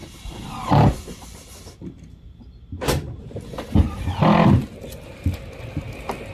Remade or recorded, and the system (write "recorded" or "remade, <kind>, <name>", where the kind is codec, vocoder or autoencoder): recorded